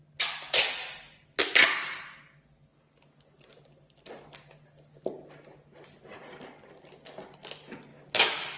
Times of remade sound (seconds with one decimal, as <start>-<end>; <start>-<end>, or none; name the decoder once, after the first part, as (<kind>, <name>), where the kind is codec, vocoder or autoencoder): 7.9-8.6 (autoencoder, DAC-VAE)